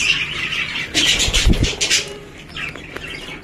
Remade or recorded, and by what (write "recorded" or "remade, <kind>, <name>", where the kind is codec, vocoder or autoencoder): recorded